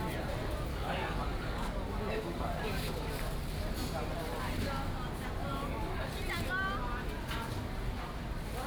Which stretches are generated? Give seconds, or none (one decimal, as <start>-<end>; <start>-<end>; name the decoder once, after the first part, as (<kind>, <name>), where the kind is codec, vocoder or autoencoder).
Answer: 0.7-3.1 (codec, DAC); 5.5-6.1